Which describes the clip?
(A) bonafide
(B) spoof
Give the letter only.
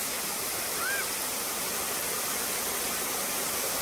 A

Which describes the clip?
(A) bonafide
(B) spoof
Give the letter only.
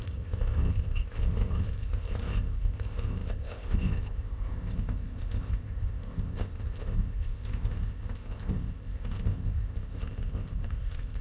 B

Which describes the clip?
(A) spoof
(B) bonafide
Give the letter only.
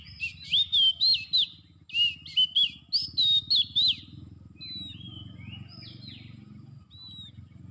B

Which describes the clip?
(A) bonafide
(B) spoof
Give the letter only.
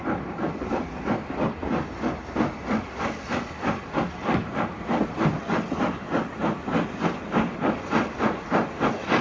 A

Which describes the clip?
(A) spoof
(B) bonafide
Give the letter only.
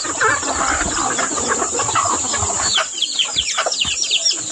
B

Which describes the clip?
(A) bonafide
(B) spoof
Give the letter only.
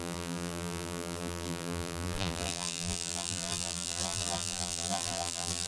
B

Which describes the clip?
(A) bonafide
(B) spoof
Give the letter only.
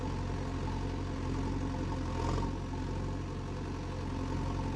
A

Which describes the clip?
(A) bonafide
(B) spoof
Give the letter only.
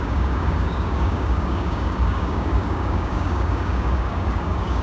B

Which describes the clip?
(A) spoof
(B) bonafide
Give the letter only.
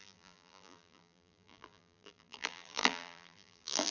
A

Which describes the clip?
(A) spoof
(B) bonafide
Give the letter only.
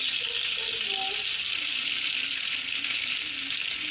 B